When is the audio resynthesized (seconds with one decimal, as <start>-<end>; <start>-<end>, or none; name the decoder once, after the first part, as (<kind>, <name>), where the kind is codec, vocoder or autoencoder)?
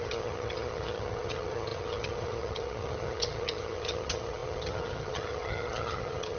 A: 0.0-6.4 (vocoder, HiFi-GAN)